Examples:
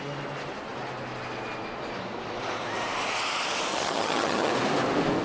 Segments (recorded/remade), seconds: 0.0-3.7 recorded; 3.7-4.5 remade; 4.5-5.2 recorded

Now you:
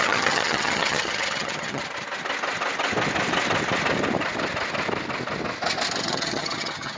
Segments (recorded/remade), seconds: 0.0-1.8 remade; 1.8-6.0 recorded; 6.0-7.0 remade

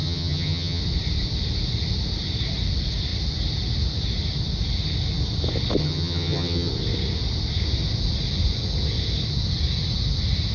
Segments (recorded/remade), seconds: 0.0-0.8 remade; 0.8-5.8 recorded; 5.8-6.7 remade; 6.7-10.5 recorded

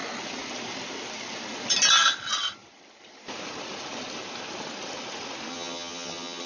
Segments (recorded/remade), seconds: 0.0-5.5 recorded; 5.5-6.5 remade

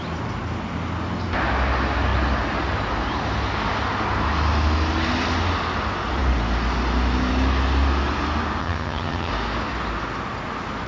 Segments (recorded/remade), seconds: 0.0-8.6 recorded; 8.6-9.3 remade; 9.3-10.9 recorded

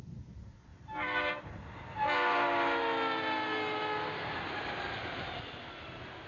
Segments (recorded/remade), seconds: 0.0-6.3 recorded

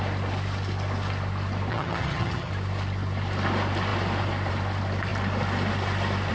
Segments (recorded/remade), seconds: 0.0-1.7 recorded; 1.7-2.5 remade; 2.5-6.3 recorded